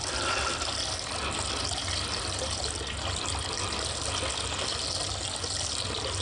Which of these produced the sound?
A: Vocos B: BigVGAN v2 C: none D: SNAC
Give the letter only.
C